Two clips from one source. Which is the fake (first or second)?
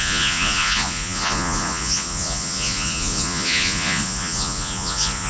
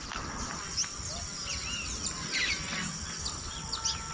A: first